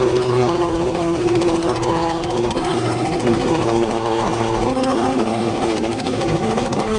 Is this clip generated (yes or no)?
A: yes